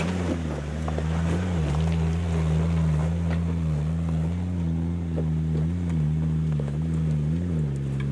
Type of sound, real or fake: real